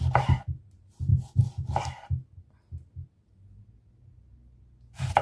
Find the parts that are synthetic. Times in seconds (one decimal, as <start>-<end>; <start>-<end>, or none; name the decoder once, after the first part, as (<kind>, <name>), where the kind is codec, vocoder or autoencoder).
none